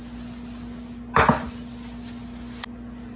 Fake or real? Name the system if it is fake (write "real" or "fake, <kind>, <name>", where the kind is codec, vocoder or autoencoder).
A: real